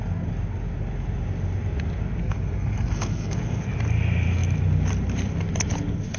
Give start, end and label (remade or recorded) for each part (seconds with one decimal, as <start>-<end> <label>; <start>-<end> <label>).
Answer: 0.0-2.2 recorded; 2.2-3.6 remade; 3.6-6.2 recorded